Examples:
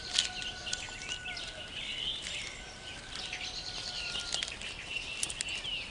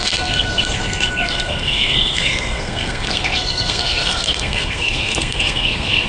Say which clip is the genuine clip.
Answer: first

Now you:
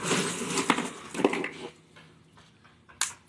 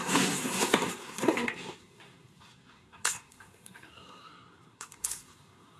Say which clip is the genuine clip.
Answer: first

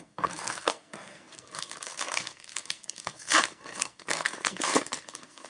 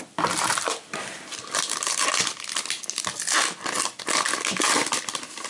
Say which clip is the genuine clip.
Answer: second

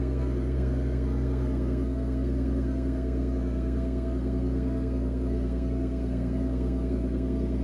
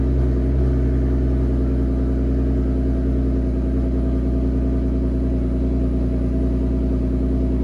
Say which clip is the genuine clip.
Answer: second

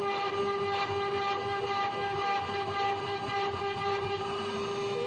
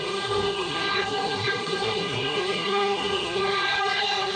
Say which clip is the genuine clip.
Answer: first